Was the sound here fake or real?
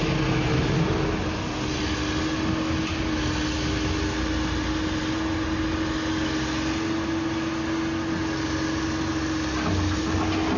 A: real